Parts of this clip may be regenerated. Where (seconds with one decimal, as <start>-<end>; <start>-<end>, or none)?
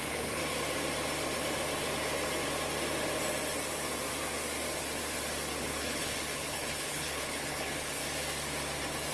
0.0-0.4; 5.6-8.0